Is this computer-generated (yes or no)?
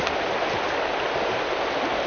no